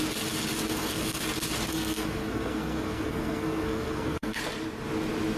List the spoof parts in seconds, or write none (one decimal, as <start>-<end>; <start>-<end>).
0.7-1.2; 1.7-4.4